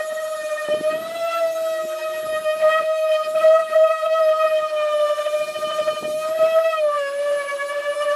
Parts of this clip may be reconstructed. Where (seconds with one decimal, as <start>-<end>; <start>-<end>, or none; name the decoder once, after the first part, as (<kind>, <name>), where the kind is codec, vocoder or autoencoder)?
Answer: 2.3-4.2 (autoencoder, DAC-VAE)